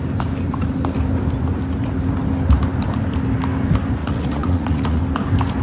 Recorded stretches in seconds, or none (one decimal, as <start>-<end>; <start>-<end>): 0.0-4.0; 5.0-5.6